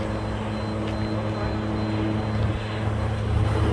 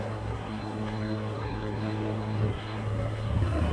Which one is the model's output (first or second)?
second